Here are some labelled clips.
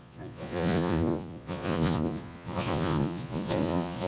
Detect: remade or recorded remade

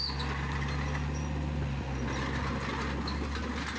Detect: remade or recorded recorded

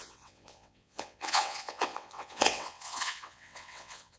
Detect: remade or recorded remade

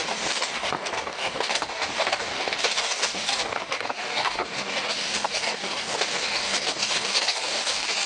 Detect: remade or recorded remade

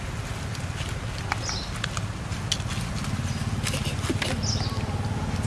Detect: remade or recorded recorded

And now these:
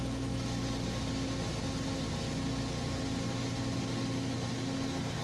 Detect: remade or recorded recorded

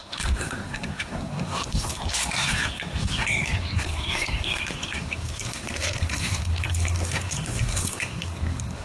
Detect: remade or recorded remade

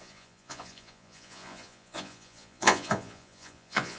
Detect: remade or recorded remade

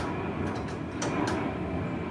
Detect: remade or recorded recorded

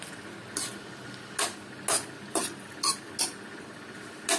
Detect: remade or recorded recorded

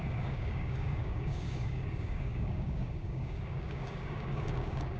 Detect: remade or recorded remade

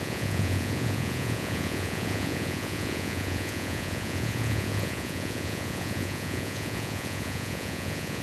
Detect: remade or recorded remade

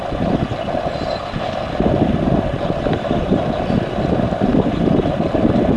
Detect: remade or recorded recorded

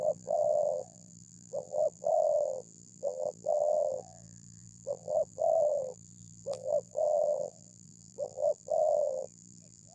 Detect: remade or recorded remade